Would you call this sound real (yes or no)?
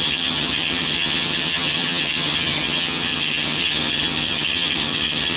no